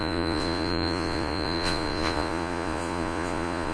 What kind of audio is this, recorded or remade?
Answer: remade